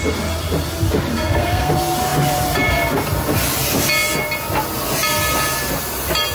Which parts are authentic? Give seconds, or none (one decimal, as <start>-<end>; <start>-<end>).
0.0-1.1; 1.7-6.3